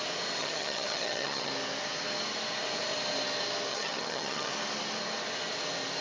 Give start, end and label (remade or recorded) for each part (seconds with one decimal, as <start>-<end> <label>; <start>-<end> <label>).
0.0-0.4 recorded; 0.4-1.5 remade; 1.5-3.7 recorded; 3.7-4.5 remade; 4.5-6.0 recorded